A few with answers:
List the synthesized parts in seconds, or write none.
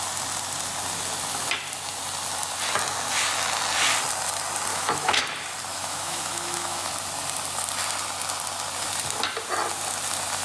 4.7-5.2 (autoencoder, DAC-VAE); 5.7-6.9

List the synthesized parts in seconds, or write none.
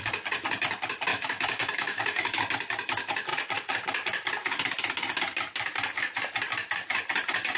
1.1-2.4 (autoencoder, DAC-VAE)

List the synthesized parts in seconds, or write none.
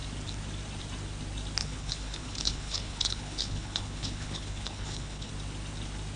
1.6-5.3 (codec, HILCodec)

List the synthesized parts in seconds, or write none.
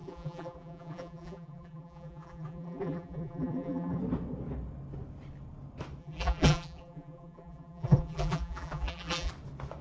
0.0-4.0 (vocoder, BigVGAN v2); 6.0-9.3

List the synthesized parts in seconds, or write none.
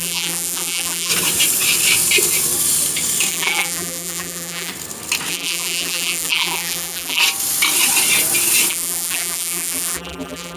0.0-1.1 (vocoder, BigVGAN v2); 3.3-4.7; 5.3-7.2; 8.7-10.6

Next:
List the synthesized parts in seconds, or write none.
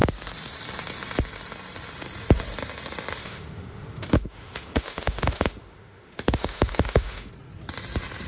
3.2-7.3 (autoencoder, DAC-VAE)